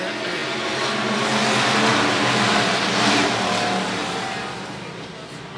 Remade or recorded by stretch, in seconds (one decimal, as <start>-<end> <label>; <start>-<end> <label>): 0.0-5.6 recorded